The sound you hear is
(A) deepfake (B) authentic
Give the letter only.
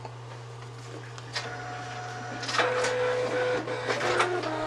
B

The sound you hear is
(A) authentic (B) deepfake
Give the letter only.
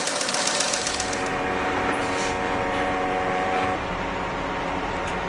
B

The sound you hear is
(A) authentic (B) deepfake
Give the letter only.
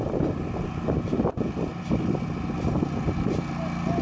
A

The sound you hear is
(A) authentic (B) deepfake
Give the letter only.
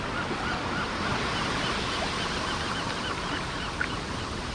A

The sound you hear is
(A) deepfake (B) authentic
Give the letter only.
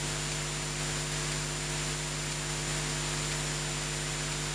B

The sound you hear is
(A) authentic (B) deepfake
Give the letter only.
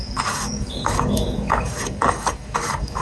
B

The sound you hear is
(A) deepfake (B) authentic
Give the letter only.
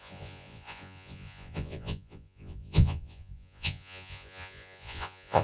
A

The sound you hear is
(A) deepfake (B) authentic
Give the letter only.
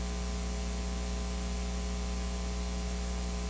B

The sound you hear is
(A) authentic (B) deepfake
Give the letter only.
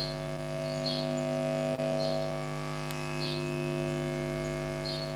A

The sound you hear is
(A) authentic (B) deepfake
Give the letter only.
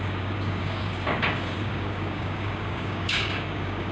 B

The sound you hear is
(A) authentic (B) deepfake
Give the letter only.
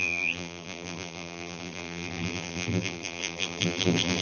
B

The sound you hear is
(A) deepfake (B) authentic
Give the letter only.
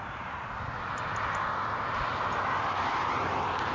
B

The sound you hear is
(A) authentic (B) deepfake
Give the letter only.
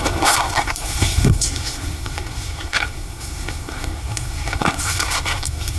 B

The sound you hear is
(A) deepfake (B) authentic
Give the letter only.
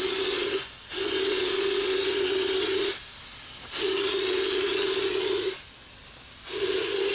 B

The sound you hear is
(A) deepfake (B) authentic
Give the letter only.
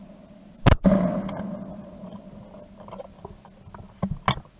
B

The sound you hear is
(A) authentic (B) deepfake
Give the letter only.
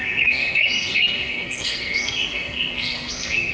B